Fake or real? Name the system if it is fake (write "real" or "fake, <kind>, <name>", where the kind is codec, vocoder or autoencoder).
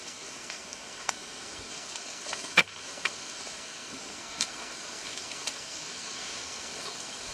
fake, codec, SNAC